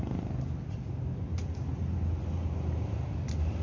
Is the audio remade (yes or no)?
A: no